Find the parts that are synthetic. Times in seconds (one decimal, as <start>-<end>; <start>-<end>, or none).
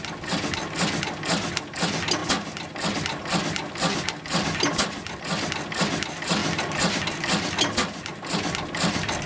none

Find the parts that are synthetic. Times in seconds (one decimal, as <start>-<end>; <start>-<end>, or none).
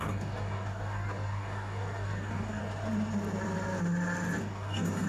0.0-2.6; 4.4-5.1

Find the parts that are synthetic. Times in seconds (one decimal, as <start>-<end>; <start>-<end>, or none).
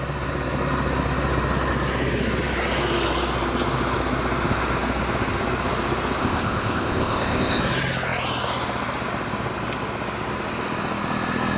6.2-7.6